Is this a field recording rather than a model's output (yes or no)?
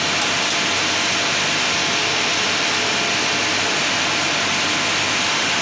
yes